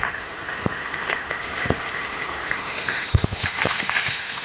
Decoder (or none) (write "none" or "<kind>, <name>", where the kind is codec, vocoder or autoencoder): autoencoder, DAC-VAE